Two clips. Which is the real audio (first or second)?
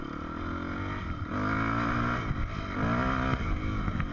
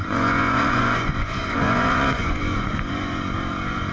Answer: first